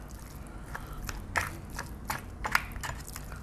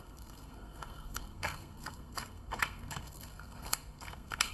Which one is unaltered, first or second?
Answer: first